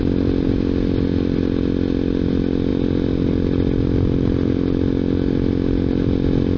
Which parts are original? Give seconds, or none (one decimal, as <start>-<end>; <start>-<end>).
0.0-6.6

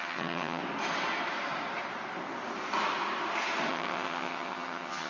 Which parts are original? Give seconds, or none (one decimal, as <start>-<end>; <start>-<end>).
0.6-3.7

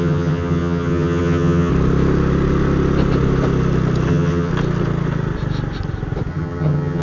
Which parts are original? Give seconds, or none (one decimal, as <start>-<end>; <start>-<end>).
1.7-4.1; 4.5-6.3

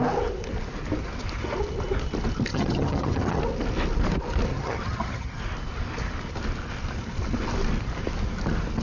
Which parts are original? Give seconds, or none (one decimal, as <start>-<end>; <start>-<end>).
0.0-2.5; 3.4-4.5; 5.4-8.8